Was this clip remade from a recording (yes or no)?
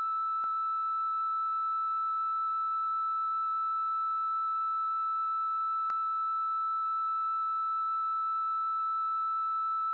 yes